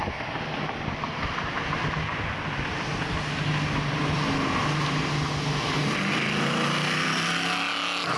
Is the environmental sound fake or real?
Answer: real